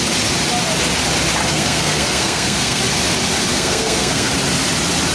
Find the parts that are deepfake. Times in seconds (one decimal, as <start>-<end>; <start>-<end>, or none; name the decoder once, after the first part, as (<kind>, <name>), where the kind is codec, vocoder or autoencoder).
1.5-2.8 (codec, SNAC); 3.5-4.3